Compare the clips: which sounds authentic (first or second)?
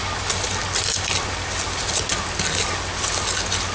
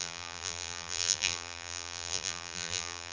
first